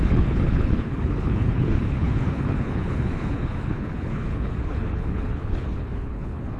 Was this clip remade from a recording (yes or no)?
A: yes